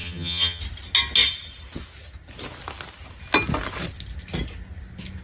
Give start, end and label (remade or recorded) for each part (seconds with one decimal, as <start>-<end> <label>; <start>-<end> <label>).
0.0-0.6 remade; 0.6-5.2 recorded